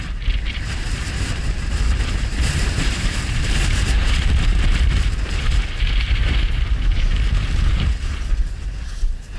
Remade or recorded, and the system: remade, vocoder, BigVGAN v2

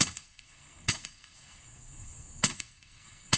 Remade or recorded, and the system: remade, codec, SNAC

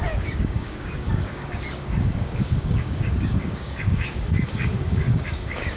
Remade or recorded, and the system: remade, codec, DAC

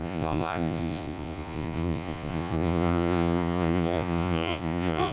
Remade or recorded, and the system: remade, vocoder, Vocos